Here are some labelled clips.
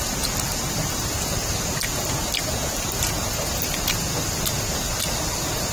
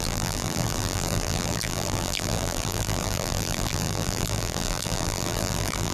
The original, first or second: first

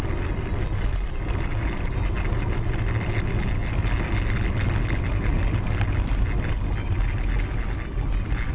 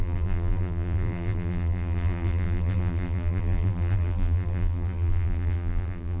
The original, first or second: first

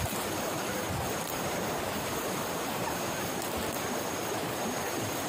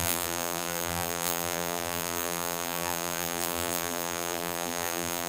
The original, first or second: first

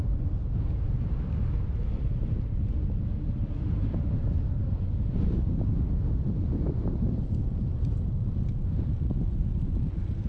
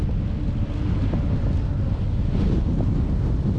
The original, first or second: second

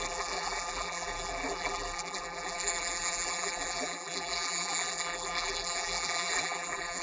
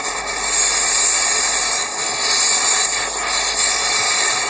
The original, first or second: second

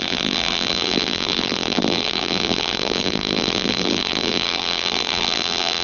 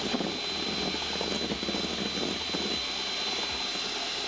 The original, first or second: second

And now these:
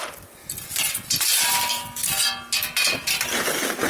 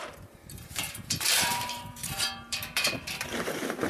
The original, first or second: first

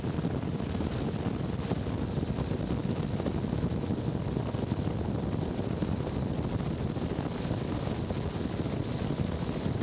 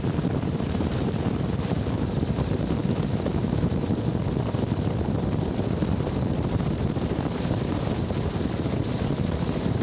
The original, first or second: first